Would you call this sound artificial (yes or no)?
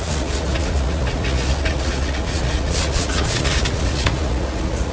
yes